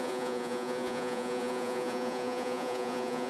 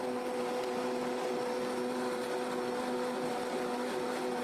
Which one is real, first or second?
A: second